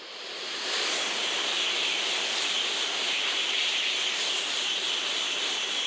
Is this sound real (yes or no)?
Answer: yes